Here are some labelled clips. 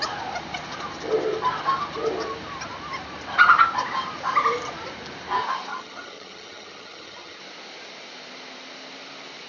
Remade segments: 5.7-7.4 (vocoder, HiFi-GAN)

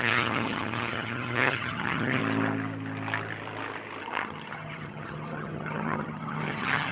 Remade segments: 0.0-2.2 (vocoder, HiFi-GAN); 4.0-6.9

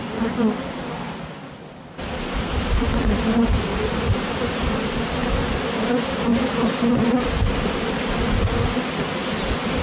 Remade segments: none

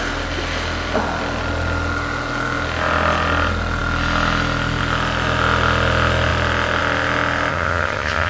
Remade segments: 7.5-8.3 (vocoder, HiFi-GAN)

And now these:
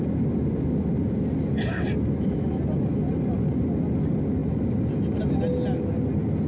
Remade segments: none

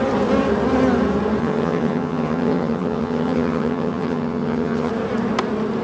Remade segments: 1.4-4.9 (vocoder, HiFi-GAN)

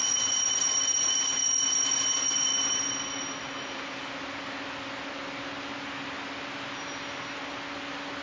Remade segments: none